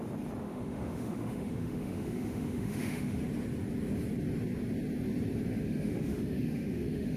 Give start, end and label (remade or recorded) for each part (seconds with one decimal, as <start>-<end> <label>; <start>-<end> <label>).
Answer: 0.0-0.4 recorded; 0.4-3.2 remade; 3.2-5.5 recorded; 5.5-7.2 remade